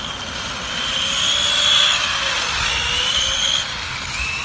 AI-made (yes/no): no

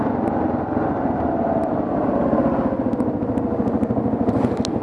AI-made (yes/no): no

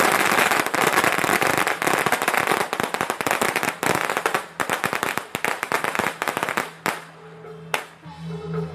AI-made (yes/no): no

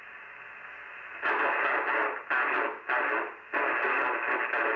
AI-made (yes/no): no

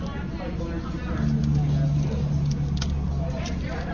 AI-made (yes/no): no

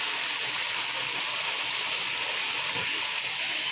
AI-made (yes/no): no